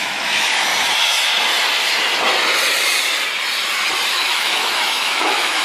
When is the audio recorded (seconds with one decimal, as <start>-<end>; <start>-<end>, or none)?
0.7-4.1